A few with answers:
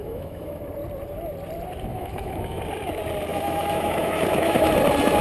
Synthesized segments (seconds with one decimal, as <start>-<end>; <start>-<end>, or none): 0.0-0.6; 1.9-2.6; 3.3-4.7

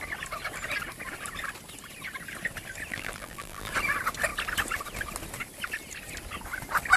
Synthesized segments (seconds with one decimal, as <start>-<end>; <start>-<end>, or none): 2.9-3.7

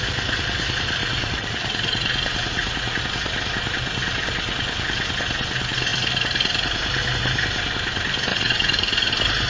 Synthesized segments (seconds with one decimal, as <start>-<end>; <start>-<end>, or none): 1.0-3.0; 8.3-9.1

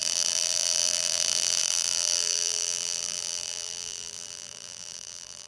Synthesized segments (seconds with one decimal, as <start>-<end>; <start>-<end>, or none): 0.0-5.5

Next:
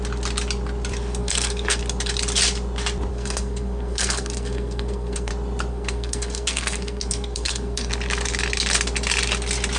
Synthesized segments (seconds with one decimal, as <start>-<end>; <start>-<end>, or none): 1.2-1.8; 3.1-5.3; 5.7-7.9

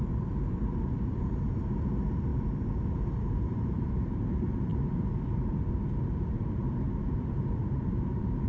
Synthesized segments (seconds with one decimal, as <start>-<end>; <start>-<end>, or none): 0.0-8.5

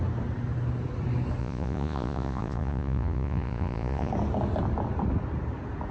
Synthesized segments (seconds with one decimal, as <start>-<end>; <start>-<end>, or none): 1.4-4.1

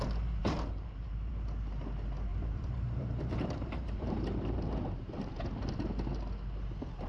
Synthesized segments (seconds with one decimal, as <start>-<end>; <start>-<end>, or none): 0.4-1.3; 2.3-5.3